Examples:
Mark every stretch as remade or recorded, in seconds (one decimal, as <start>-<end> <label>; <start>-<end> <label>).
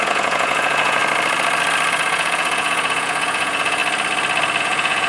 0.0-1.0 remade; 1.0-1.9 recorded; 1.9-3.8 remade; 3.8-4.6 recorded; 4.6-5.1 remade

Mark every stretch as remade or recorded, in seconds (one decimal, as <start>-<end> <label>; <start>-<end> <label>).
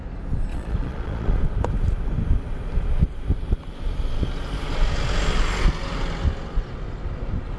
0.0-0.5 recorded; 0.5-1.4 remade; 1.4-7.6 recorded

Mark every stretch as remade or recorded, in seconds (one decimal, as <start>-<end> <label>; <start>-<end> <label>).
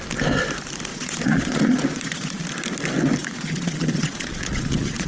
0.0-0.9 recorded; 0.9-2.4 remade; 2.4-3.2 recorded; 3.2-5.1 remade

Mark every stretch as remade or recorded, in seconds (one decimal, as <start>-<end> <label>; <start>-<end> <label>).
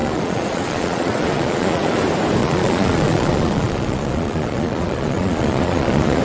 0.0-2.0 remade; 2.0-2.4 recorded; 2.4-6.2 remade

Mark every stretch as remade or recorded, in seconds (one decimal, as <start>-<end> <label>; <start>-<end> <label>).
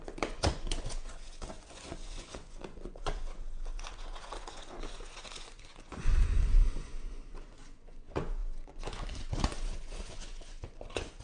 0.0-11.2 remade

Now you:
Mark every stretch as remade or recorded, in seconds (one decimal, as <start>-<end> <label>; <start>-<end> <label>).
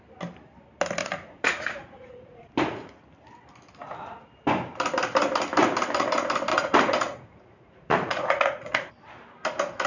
0.0-1.0 recorded; 1.0-2.9 remade; 2.9-6.5 recorded; 6.5-8.9 remade; 8.9-9.9 recorded